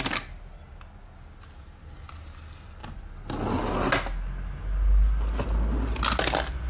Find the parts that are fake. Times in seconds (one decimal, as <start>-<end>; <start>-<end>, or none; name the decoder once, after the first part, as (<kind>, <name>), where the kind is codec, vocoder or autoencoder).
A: none